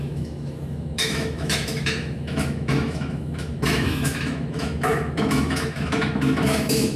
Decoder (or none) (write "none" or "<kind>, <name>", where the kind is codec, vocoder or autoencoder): autoencoder, DAC-VAE